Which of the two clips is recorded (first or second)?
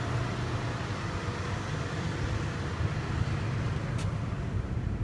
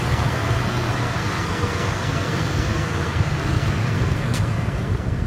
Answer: first